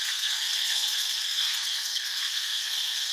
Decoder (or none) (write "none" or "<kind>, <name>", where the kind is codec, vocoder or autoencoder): codec, SNAC